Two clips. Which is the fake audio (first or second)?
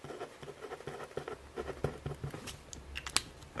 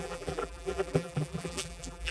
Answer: second